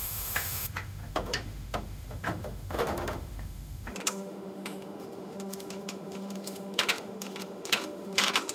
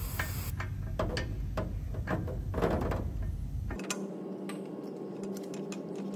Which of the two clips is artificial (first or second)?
first